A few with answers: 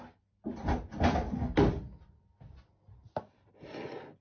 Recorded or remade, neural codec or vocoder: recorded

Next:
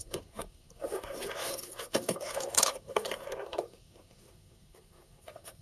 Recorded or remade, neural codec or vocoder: remade, codec, SNAC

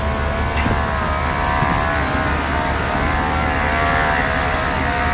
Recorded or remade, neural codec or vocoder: recorded